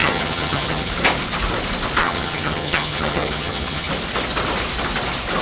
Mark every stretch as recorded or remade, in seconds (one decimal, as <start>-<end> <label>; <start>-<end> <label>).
0.0-0.9 remade; 0.9-2.0 recorded; 2.0-3.9 remade; 3.9-5.4 recorded